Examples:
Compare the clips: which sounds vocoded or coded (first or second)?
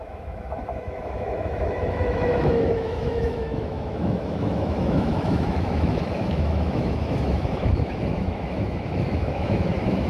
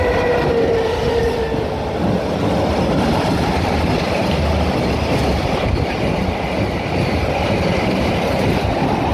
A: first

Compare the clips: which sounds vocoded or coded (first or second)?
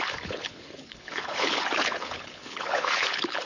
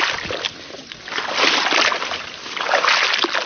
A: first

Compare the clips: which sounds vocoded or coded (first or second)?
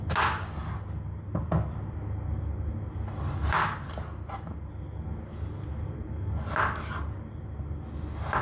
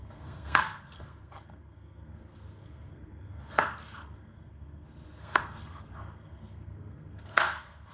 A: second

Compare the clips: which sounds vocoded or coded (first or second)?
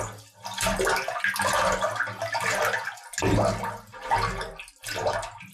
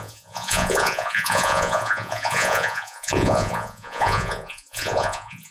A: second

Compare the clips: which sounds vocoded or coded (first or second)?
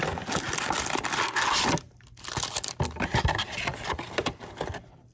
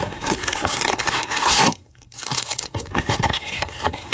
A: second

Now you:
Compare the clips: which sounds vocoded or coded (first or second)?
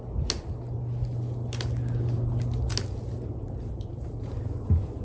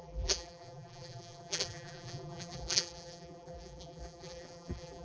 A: second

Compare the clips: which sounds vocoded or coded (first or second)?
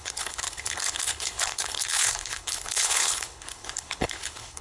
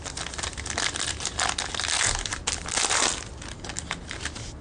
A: first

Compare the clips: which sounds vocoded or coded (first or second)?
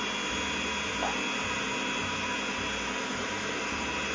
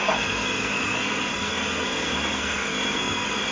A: second